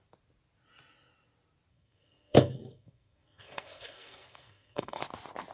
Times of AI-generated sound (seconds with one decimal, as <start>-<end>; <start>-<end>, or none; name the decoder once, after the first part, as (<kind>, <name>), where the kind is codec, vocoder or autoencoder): 1.7-5.0 (codec, SNAC)